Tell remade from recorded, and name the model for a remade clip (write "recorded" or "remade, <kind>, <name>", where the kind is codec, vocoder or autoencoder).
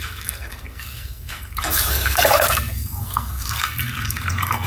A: remade, codec, SNAC